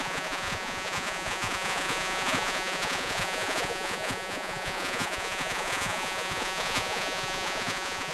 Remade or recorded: remade